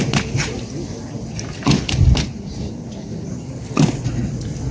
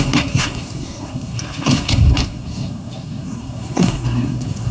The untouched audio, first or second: first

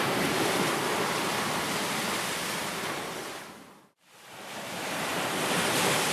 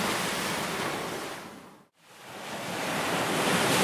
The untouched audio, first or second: second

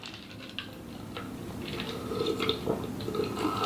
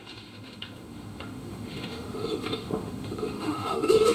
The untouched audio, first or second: first